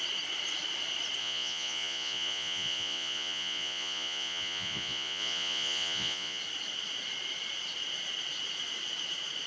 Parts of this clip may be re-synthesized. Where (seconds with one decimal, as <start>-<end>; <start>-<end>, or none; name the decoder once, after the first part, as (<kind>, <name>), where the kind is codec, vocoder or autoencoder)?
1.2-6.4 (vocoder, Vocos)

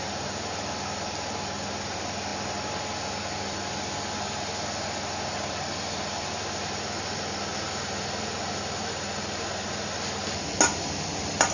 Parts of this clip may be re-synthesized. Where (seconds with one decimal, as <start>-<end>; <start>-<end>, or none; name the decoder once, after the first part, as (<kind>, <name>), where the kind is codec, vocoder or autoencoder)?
none

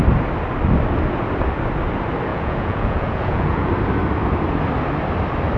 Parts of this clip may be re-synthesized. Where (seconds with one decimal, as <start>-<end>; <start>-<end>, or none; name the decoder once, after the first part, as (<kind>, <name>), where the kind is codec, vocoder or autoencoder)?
2.3-3.7 (vocoder, Vocos)